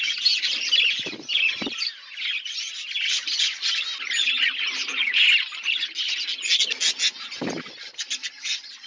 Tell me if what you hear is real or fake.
real